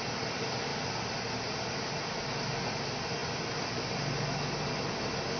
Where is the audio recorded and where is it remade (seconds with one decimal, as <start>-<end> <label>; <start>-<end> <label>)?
0.0-5.4 recorded

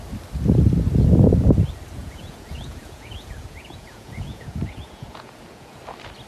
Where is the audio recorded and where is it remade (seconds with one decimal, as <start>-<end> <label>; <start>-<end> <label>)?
0.0-2.0 recorded; 2.0-5.8 remade; 5.8-6.3 recorded

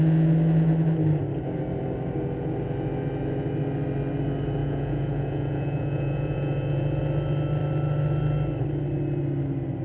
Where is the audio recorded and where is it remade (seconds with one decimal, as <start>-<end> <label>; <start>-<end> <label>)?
0.0-4.6 recorded; 4.6-7.0 remade; 7.0-9.8 recorded

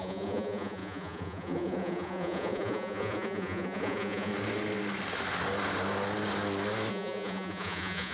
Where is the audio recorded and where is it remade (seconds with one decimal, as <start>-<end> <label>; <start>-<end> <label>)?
0.0-4.3 remade; 4.3-6.9 recorded; 6.9-8.1 remade

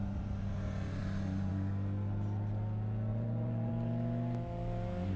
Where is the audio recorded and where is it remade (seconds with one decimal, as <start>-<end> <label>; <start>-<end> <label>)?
0.0-3.1 recorded; 3.1-3.7 remade; 3.7-5.2 recorded

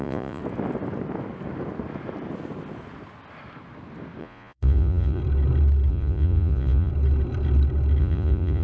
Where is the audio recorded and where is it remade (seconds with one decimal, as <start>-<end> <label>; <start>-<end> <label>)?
0.0-0.4 remade; 0.4-4.2 recorded; 4.2-5.2 remade; 5.2-5.9 recorded; 5.9-6.9 remade; 6.9-8.0 recorded; 8.0-8.6 remade

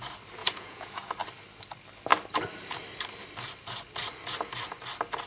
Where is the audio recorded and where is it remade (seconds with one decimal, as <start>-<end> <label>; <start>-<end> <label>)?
0.0-0.4 recorded; 0.4-1.1 remade; 1.1-5.3 recorded